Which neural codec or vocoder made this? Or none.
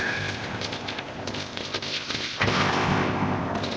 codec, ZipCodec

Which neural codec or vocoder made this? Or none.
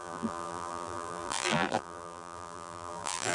vocoder, BigVGAN v2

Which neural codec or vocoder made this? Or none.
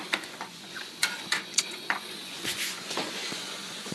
vocoder, Vocos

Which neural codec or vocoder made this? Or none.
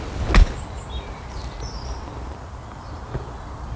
none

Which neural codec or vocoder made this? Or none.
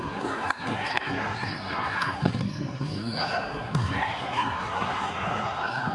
codec, SNAC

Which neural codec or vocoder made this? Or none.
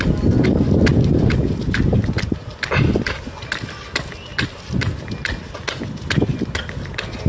none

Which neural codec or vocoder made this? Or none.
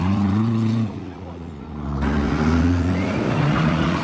vocoder, Vocos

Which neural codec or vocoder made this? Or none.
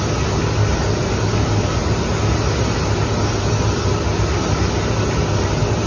none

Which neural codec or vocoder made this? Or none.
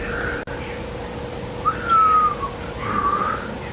none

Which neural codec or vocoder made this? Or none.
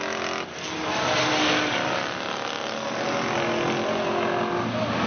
none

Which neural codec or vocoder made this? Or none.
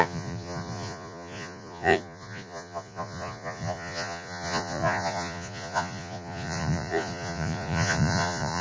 vocoder, Vocos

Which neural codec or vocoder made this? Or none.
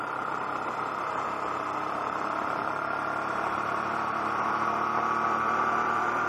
vocoder, BigVGAN v2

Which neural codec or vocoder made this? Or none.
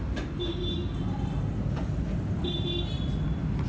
none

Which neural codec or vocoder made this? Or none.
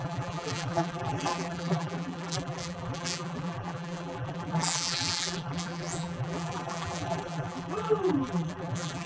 vocoder, BigVGAN v2